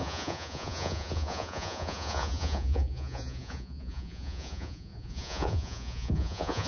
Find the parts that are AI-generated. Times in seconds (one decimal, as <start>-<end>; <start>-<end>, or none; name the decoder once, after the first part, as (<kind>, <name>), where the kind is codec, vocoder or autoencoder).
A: 0.0-6.7 (vocoder, Vocos)